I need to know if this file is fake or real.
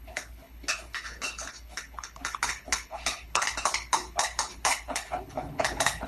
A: fake